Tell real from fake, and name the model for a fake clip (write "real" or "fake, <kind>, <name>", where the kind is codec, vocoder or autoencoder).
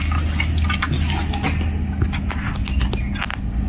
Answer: real